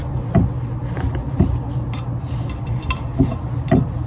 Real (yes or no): yes